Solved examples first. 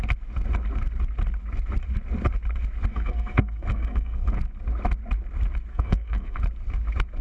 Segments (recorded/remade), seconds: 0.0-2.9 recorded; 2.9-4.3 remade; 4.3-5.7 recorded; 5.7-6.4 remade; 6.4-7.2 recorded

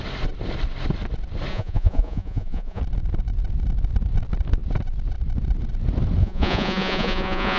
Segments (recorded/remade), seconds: 0.0-1.5 recorded; 1.5-2.8 remade; 2.8-6.2 recorded; 6.2-7.6 remade

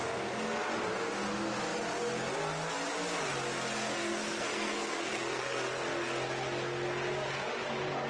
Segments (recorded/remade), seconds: 0.0-4.0 recorded; 4.0-5.7 remade; 5.7-8.1 recorded

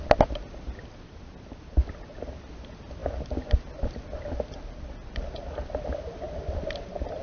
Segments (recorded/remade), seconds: 0.0-7.2 recorded